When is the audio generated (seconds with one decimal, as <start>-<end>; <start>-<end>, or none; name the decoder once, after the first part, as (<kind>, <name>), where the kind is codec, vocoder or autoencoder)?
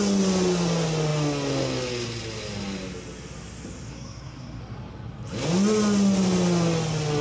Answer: 3.9-4.6 (codec, SNAC)